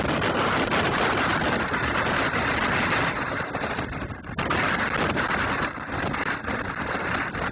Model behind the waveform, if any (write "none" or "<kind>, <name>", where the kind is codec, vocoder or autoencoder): none